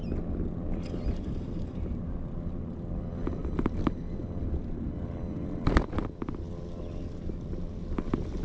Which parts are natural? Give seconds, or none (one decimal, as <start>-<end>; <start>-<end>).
0.0-8.4